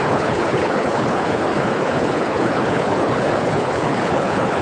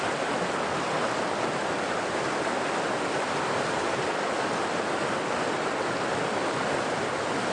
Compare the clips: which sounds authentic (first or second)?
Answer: second